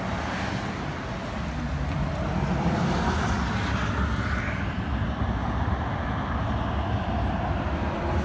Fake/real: real